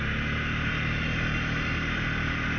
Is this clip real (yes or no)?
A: yes